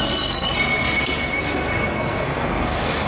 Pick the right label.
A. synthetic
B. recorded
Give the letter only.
A